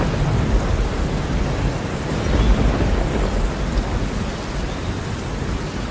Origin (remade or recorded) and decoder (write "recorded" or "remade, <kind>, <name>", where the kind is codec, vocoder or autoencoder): recorded